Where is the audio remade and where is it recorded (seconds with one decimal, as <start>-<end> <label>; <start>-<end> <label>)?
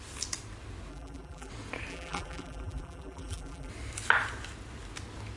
0.0-0.9 recorded; 0.9-1.5 remade; 1.5-1.9 recorded; 1.9-3.7 remade; 3.7-5.4 recorded